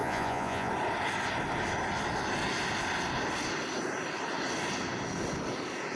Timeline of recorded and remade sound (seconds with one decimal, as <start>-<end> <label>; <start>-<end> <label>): 0.0-0.7 remade; 0.7-6.0 recorded